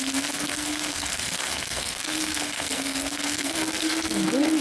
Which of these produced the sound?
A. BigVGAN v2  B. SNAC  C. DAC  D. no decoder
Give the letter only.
B